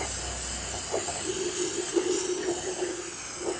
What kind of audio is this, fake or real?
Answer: real